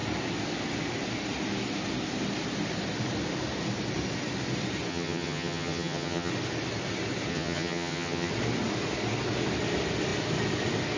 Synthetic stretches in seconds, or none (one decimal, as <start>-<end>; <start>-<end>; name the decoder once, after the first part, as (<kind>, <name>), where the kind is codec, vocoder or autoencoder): 4.9-6.3 (vocoder, HiFi-GAN); 7.3-8.3